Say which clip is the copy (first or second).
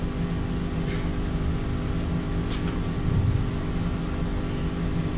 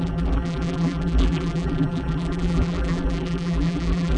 second